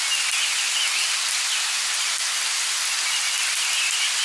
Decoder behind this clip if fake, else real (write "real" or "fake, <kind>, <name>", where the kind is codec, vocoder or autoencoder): real